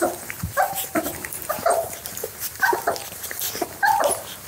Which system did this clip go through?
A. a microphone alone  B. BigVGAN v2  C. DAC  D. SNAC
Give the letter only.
B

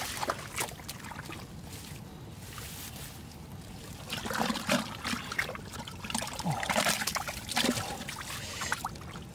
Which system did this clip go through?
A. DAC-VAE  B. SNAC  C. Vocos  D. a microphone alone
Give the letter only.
D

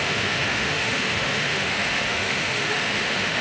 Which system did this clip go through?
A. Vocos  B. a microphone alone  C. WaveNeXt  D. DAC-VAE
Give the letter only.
D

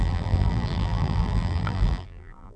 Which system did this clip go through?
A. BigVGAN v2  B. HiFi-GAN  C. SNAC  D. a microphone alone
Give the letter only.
A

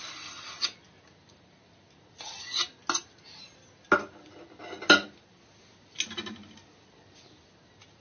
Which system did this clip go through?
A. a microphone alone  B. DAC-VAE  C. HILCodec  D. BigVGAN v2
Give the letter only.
A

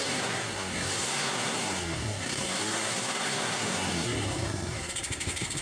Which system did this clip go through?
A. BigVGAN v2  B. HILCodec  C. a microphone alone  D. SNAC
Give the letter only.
D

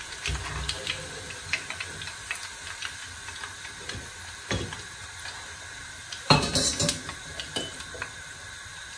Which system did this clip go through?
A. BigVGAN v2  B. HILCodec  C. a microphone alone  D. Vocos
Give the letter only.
C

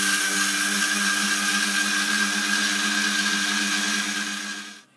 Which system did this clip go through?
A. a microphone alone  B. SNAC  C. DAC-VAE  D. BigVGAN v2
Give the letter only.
A